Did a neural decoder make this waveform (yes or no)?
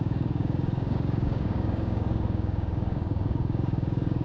yes